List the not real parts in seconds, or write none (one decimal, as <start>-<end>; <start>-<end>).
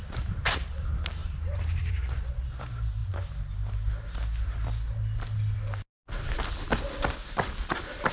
1.2-1.9